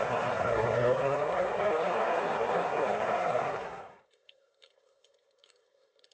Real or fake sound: fake